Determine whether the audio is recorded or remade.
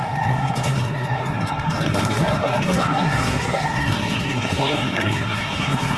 remade